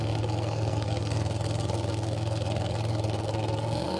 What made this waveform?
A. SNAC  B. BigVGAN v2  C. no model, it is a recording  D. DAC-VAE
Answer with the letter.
A